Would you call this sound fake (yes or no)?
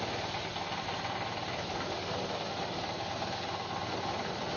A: no